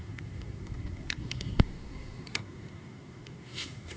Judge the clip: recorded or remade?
remade